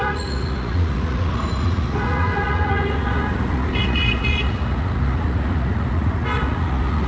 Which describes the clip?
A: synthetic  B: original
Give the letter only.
A